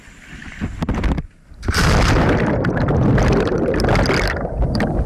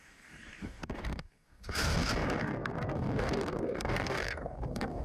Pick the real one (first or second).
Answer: first